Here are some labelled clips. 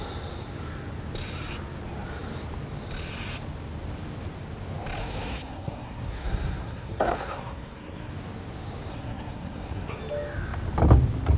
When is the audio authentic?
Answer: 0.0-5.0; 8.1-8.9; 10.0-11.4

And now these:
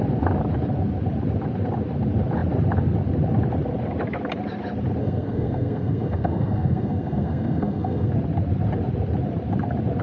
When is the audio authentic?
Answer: 0.0-5.0; 8.1-10.0

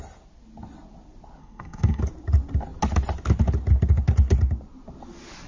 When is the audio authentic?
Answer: 0.0-1.4; 2.0-5.5

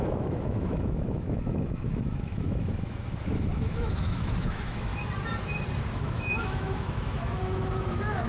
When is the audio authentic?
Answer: 4.9-6.0

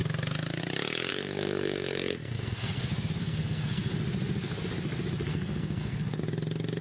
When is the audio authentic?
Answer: 0.0-1.1; 2.8-3.2; 3.9-5.3; 6.2-6.8